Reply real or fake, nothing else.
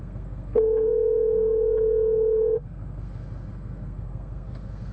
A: fake